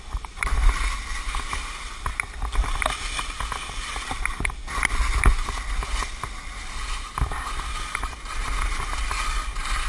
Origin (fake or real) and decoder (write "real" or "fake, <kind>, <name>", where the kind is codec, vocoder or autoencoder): real